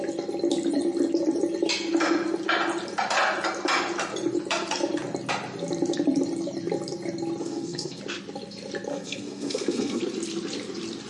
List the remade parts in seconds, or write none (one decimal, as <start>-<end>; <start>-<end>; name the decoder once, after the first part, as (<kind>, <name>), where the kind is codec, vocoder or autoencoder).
7.4-8.0 (codec, SNAC); 8.9-10.0